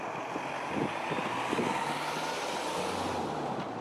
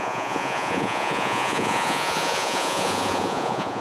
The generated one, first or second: second